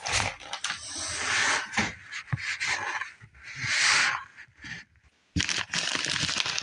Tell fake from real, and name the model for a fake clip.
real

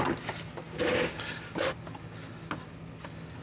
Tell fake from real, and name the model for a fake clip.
real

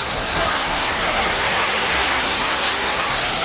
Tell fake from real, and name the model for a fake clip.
fake, codec, SNAC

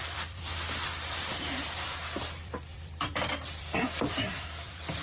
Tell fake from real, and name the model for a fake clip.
fake, vocoder, BigVGAN v2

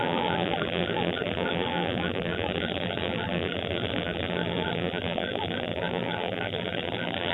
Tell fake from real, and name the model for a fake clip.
fake, vocoder, BigVGAN v2